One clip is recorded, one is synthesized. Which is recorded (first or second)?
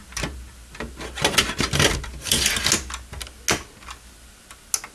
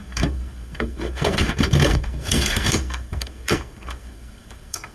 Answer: first